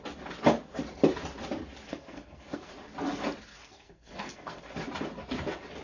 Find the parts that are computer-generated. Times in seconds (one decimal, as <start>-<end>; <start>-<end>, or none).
1.9-2.7; 3.5-4.6